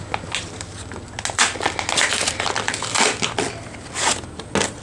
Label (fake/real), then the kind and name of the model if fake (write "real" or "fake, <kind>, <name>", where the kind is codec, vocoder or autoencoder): real